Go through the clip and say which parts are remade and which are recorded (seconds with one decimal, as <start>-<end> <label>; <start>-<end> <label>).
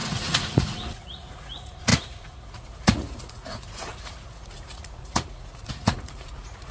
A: 0.0-6.7 remade